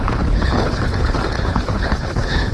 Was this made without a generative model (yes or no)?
no